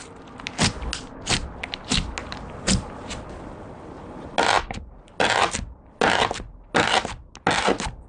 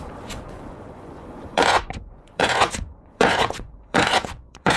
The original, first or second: first